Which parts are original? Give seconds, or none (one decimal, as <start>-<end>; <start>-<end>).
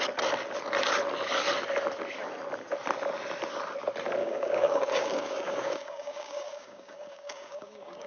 0.0-4.2